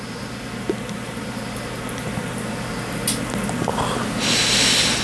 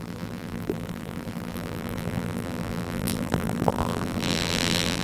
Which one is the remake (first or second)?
second